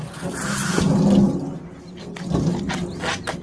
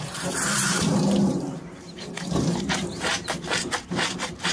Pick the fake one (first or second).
second